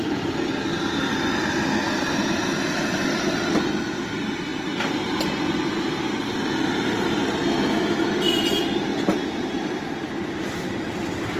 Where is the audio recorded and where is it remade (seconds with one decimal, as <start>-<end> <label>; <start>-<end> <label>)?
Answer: 0.0-1.4 recorded; 1.4-2.0 remade; 2.0-11.4 recorded